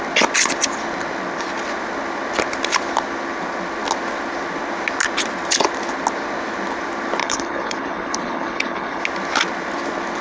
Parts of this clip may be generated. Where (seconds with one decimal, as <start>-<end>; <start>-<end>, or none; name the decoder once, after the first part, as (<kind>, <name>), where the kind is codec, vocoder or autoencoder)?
7.2-9.0 (codec, HILCodec)